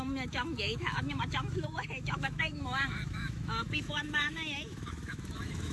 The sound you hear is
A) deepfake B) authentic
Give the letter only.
A